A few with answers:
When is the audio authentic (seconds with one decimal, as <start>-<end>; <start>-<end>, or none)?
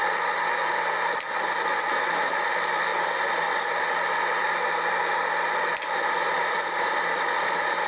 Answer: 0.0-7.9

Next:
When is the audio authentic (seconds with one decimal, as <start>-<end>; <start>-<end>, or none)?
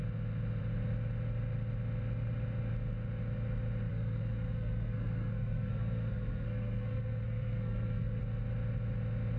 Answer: 0.0-3.9; 8.2-9.4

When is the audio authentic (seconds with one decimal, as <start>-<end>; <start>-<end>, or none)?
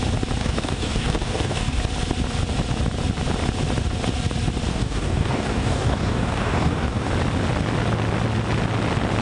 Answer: 0.0-0.4; 1.8-4.7; 7.1-9.2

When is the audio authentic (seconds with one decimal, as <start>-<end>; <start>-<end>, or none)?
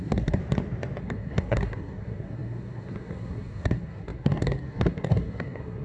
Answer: 0.4-1.0